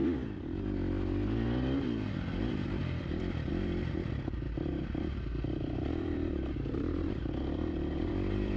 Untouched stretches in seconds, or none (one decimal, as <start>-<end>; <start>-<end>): 0.0-2.1